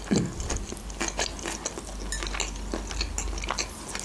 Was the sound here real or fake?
real